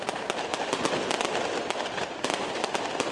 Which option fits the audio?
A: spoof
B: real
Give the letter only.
B